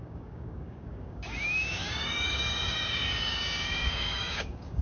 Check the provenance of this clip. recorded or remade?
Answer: remade